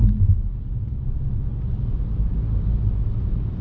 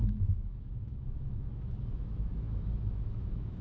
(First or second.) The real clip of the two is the first